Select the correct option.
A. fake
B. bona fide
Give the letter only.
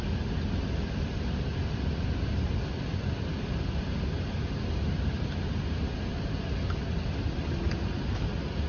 B